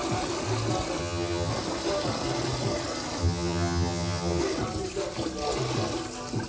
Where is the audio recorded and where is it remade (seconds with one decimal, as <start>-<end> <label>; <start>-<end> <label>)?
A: 0.0-1.0 recorded; 1.0-1.5 remade; 1.5-3.2 recorded; 3.2-4.4 remade; 4.4-6.5 recorded